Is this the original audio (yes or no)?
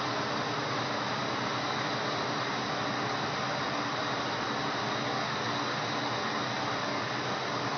yes